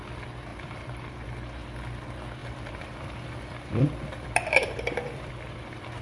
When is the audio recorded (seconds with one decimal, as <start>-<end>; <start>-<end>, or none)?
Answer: 0.0-0.5; 1.1-2.4; 5.3-6.0